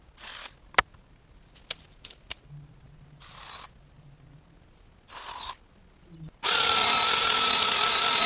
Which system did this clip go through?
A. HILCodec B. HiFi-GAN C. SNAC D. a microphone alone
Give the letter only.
D